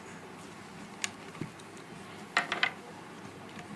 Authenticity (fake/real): real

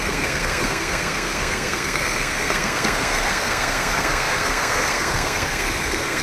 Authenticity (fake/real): fake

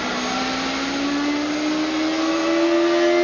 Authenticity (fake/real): real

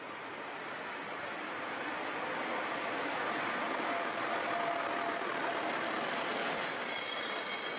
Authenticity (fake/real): real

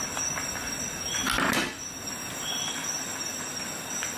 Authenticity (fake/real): real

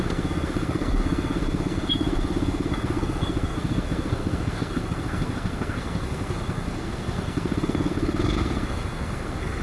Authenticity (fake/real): fake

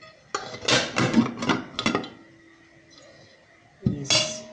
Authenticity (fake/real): real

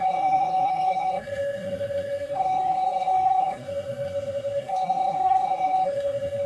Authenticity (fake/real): fake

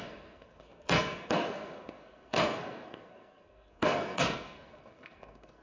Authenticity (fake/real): fake